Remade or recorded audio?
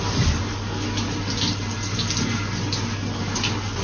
recorded